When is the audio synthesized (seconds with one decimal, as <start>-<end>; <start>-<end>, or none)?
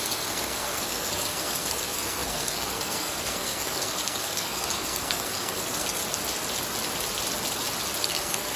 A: 0.0-6.0; 8.0-8.6